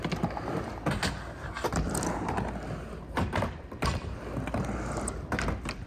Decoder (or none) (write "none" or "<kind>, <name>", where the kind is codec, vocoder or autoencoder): none